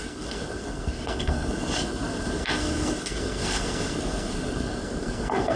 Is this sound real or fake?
fake